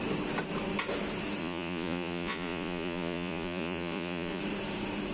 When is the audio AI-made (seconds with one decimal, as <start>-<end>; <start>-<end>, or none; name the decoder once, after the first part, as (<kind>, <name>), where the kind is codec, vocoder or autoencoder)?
1.4-4.4 (vocoder, Vocos)